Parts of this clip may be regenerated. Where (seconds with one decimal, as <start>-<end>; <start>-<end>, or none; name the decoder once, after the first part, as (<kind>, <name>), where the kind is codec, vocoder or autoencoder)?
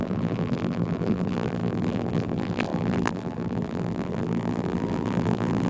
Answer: 0.0-5.7 (vocoder, BigVGAN v2)